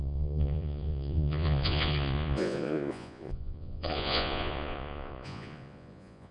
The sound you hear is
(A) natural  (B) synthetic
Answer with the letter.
B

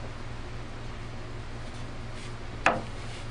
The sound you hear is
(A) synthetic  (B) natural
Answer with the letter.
B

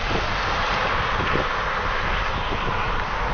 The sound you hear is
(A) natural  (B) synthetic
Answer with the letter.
A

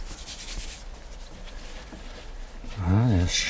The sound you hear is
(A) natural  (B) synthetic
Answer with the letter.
A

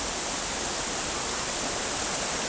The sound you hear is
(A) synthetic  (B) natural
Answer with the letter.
B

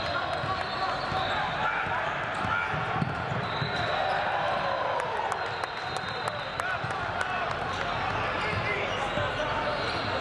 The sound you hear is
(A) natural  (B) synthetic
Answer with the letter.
A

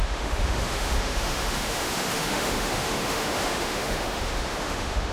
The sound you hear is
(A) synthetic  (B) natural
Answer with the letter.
A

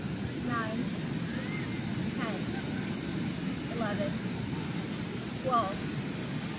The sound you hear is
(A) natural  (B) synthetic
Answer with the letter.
A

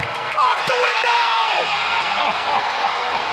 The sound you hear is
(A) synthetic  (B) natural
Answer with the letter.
A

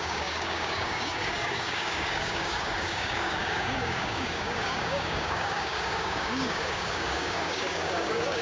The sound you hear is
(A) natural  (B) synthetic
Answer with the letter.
B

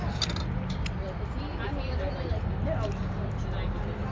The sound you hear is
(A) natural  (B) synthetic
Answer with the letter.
A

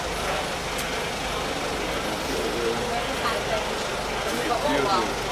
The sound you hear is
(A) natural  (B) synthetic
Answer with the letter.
A